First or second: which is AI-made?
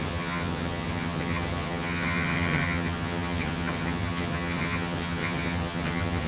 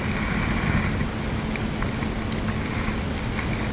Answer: first